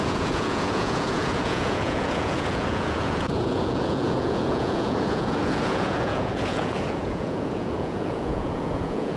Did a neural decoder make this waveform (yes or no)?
yes